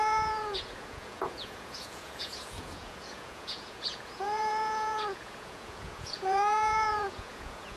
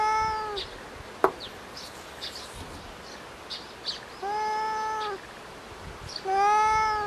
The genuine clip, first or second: second